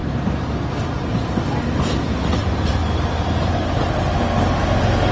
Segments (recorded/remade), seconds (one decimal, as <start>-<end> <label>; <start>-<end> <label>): 0.0-5.1 recorded